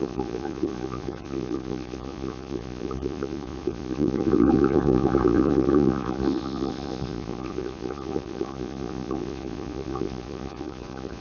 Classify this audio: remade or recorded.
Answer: remade